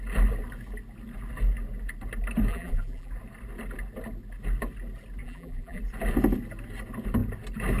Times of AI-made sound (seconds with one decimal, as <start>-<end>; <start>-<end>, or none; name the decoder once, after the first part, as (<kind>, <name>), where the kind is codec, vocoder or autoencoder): 2.5-3.1 (vocoder, BigVGAN v2); 5.2-5.8